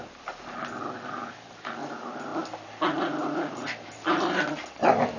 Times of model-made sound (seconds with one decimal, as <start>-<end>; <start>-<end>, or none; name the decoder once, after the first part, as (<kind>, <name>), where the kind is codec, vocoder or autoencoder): none